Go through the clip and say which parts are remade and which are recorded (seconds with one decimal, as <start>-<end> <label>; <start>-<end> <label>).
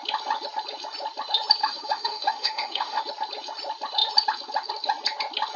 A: 0.0-1.6 recorded; 1.6-3.0 remade; 3.0-5.6 recorded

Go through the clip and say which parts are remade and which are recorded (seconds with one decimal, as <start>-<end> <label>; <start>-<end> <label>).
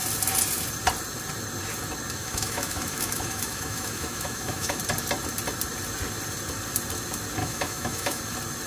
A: 0.0-2.2 recorded; 2.2-4.8 remade; 4.8-7.4 recorded; 7.4-8.2 remade; 8.2-8.7 recorded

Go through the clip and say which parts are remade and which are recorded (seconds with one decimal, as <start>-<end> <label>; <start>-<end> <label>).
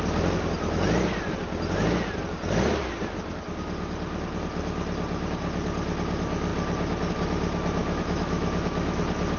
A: 0.0-7.8 recorded; 7.8-9.0 remade; 9.0-9.4 recorded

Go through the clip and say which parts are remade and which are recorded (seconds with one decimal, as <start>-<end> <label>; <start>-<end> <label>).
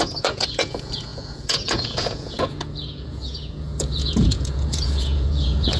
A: 0.0-5.8 remade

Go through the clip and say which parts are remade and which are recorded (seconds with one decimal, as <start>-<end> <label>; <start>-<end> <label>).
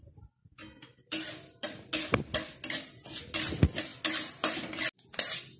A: 0.0-0.9 recorded; 0.9-1.9 remade; 1.9-5.6 recorded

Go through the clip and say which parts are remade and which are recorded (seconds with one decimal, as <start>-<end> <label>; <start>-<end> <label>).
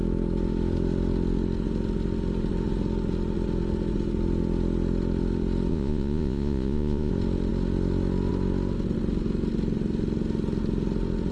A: 0.0-5.7 recorded; 5.7-7.1 remade; 7.1-11.3 recorded